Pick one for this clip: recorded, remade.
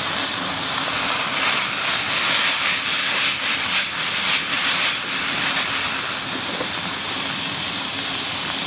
recorded